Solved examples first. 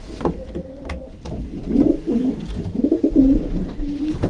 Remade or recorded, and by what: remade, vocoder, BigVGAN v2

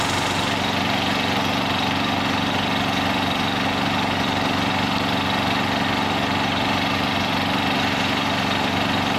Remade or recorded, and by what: recorded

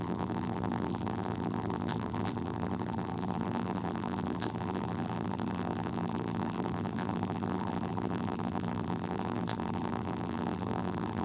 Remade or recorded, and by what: remade, vocoder, BigVGAN v2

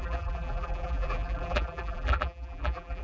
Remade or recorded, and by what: remade, vocoder, BigVGAN v2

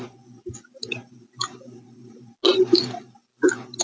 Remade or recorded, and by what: recorded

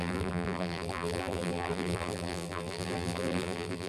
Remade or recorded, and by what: remade, vocoder, BigVGAN v2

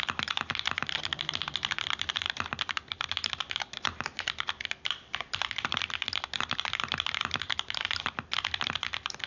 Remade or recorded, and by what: remade, vocoder, BigVGAN v2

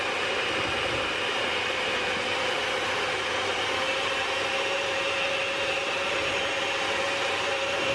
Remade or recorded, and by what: remade, vocoder, BigVGAN v2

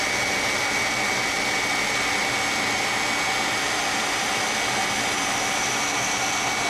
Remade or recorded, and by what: recorded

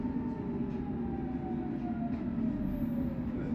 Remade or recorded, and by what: recorded